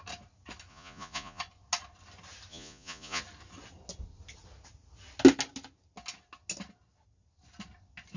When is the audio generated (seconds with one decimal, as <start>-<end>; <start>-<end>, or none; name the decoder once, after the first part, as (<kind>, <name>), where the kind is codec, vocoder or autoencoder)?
0.7-1.4 (vocoder, Vocos); 2.5-3.2